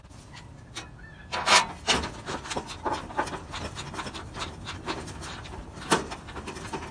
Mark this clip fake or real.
real